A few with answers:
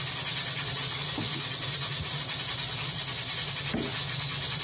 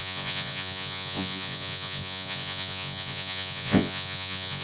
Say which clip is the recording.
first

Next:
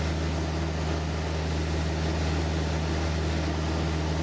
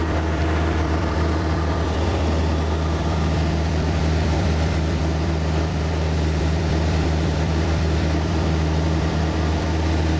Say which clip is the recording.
first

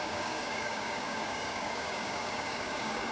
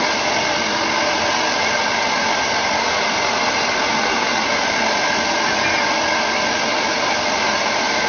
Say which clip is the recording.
second